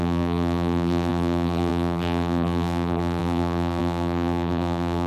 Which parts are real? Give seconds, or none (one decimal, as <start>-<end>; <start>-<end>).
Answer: none